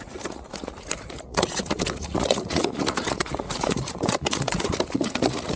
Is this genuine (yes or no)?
no